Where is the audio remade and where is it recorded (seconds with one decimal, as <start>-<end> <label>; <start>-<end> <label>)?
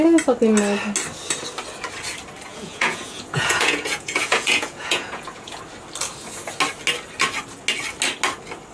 0.0-2.5 recorded; 2.5-5.6 remade; 5.6-8.7 recorded